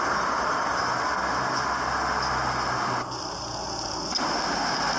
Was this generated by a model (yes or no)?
no